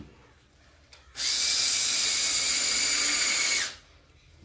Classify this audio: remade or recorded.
recorded